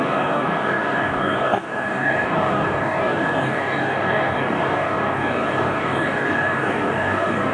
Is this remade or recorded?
remade